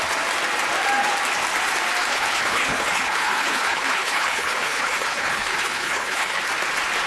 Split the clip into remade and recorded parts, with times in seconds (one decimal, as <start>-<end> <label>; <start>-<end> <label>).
0.0-2.1 recorded; 2.1-6.4 remade; 6.4-7.1 recorded